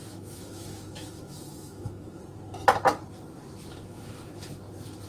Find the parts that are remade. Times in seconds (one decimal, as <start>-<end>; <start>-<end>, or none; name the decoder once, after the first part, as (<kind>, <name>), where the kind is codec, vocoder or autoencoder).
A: 0.0-2.2 (autoencoder, DAC-VAE); 3.7-4.5